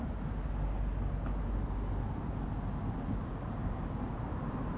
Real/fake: real